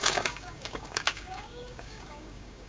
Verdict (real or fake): fake